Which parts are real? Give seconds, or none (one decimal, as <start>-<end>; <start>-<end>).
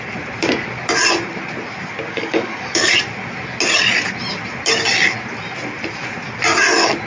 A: 0.0-2.1; 2.9-7.1